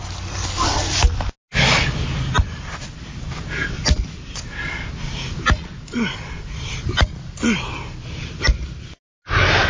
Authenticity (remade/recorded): recorded